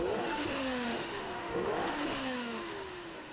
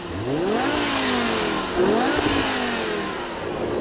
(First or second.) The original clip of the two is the second